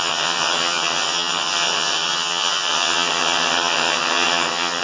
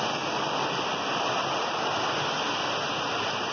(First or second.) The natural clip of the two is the second